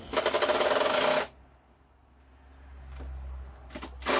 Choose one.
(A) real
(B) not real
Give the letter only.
A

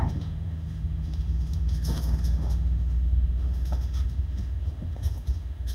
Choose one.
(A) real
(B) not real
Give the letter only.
B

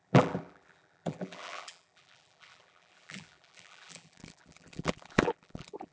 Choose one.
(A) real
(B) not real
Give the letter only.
B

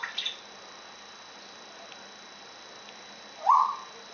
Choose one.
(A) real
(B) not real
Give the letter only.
A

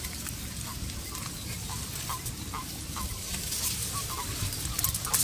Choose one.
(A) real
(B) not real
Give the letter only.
B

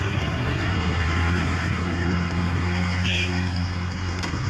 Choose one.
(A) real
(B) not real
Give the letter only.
B